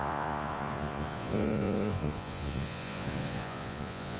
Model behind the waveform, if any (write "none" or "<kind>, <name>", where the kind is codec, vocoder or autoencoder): vocoder, Vocos